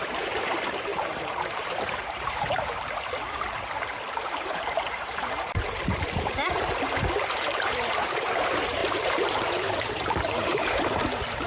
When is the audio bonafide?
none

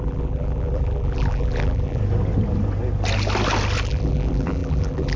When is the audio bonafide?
2.0-3.8

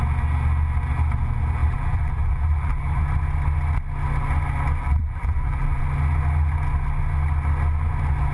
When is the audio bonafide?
0.0-1.6; 3.0-4.8; 5.8-8.3

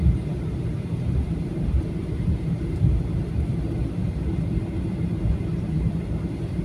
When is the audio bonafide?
3.2-5.5

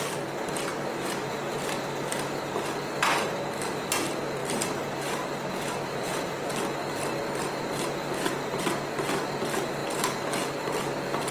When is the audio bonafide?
0.0-11.3

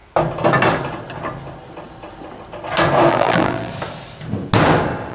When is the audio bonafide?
0.0-3.1; 3.7-5.1

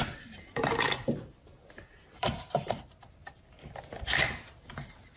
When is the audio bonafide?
2.8-5.2